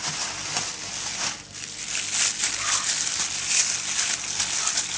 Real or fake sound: real